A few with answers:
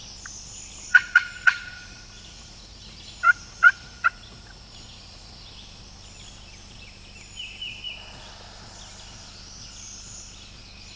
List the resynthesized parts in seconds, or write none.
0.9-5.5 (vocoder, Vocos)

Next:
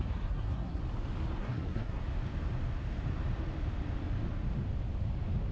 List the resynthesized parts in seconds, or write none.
0.0-0.8 (codec, SNAC); 1.4-2.0

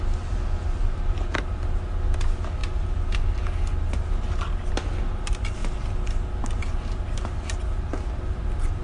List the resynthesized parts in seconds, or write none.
none